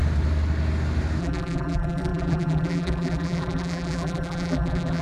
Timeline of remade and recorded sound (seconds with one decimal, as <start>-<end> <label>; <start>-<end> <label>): 0.0-1.2 recorded; 1.2-5.0 remade